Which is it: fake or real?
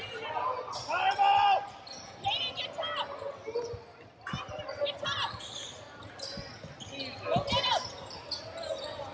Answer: real